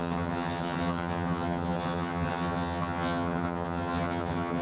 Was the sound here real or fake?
fake